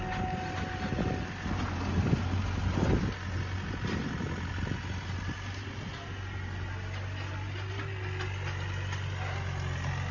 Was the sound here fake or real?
real